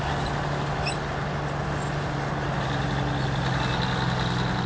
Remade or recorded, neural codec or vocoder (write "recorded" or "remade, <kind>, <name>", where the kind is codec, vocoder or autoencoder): recorded